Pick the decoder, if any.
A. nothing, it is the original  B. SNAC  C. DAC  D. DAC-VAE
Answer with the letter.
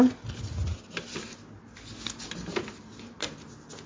A